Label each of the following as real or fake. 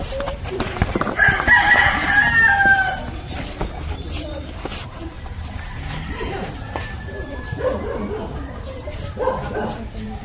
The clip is fake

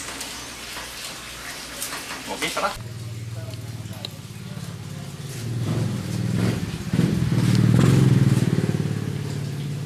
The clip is real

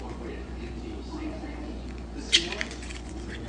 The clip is fake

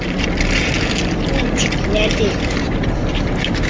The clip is fake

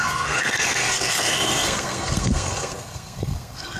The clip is fake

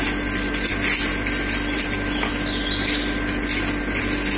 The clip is real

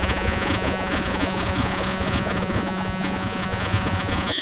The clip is fake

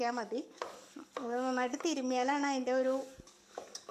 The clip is fake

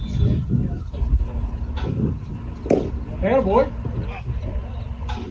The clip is real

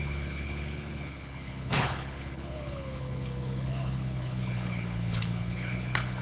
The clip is fake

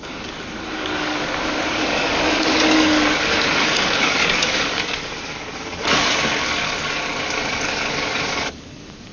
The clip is fake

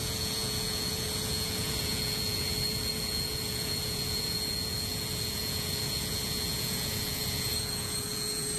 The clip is fake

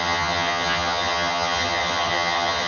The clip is fake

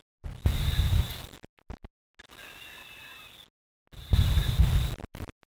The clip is real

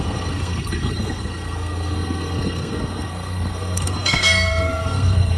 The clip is fake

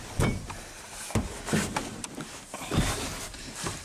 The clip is fake